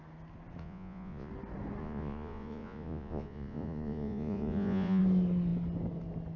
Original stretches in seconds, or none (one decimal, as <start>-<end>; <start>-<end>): 0.0-0.6; 1.3-1.8; 5.0-6.4